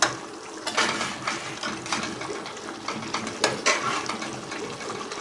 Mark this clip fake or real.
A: real